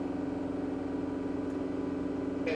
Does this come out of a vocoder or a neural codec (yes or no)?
no